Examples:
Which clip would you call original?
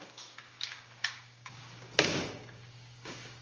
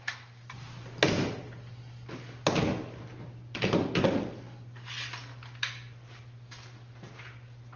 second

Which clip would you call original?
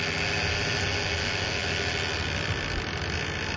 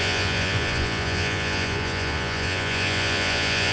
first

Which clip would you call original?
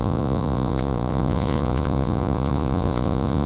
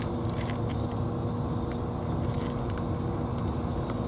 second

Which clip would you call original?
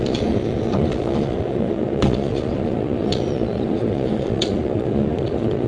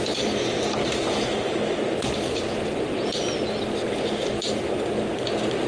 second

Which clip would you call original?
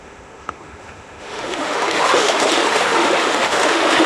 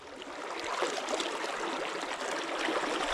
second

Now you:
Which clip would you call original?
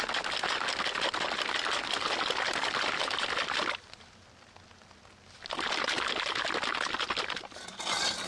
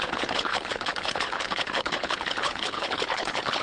first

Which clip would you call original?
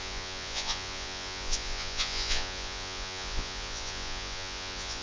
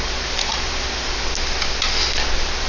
second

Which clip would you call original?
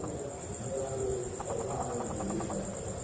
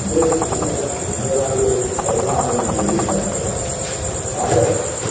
first